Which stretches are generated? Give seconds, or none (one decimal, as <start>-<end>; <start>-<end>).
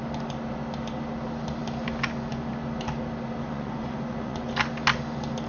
3.4-4.5